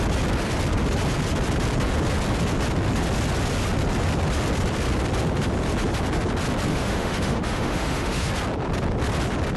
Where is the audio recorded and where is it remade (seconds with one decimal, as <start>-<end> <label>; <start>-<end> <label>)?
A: 0.0-6.7 recorded; 6.7-8.3 remade; 8.3-9.6 recorded